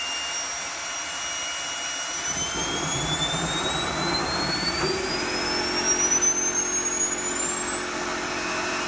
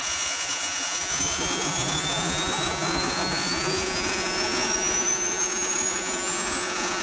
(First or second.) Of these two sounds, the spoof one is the second